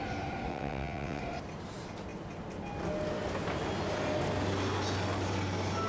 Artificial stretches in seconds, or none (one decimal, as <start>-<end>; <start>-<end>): 0.5-1.2